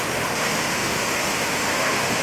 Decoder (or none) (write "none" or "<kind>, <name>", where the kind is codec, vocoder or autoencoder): autoencoder, DAC-VAE